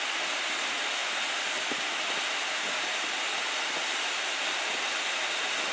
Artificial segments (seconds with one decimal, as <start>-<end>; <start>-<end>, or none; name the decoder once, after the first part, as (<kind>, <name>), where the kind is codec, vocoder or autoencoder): none